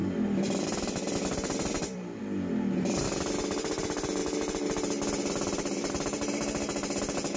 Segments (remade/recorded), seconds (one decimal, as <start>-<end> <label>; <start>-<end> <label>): 0.0-2.2 remade; 2.2-7.4 recorded